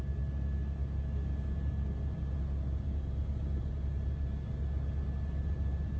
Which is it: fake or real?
real